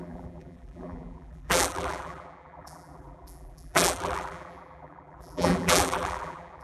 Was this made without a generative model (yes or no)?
no